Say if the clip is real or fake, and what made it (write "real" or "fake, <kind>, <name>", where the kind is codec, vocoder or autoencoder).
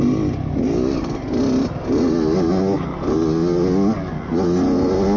real